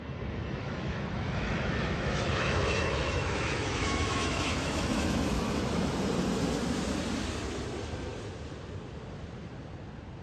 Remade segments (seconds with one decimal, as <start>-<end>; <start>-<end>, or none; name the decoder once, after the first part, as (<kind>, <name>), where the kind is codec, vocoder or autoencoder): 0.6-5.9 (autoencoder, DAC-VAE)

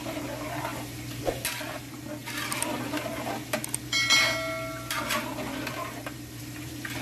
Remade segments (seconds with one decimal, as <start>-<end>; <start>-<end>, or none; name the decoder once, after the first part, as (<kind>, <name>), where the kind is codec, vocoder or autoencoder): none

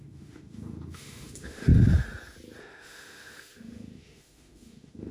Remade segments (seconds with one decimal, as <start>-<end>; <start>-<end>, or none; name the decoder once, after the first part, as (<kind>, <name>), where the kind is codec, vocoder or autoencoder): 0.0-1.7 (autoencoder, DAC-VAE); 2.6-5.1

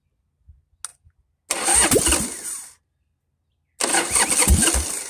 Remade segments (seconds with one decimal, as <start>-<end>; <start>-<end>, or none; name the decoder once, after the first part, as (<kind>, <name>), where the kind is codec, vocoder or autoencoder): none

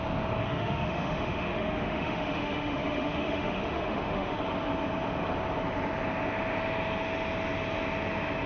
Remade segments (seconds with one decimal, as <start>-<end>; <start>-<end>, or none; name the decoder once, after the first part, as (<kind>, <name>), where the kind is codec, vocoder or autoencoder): 0.4-4.4 (autoencoder, DAC-VAE)

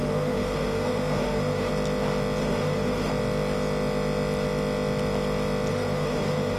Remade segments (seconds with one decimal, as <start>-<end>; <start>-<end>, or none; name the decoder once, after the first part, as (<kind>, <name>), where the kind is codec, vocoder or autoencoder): 0.0-1.7 (autoencoder, DAC-VAE); 2.4-3.1; 5.7-6.6